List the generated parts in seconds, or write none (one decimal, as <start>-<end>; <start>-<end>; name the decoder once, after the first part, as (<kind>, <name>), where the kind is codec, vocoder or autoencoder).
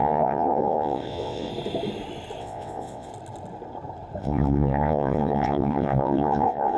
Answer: 0.0-1.5 (vocoder, WaveNeXt); 2.4-3.1; 4.2-6.8